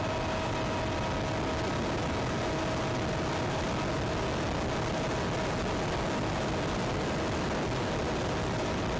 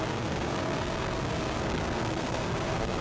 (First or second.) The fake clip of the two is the second